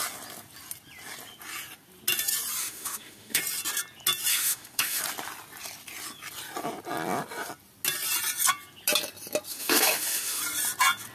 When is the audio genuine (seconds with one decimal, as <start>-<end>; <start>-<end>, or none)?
0.0-2.6; 3.4-4.3; 5.0-9.5; 10.4-11.1